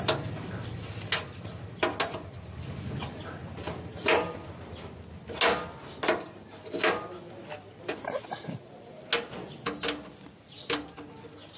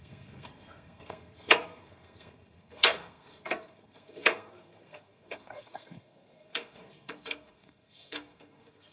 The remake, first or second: second